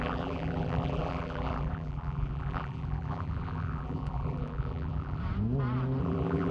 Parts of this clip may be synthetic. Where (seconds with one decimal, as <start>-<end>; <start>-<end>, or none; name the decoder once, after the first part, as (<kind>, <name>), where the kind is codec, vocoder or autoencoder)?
0.0-5.2 (vocoder, BigVGAN v2); 6.0-6.5